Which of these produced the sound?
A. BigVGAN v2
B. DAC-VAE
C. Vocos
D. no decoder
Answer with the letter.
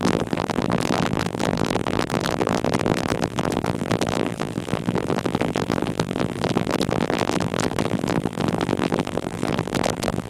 A